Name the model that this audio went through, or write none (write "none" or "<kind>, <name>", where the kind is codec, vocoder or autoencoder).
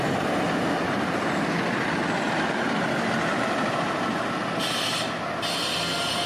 none